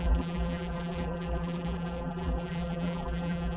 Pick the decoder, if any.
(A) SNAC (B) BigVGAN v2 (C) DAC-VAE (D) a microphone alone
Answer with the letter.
B